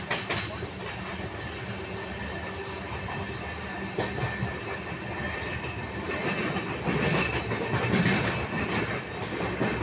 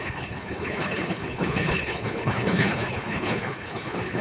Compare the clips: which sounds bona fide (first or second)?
first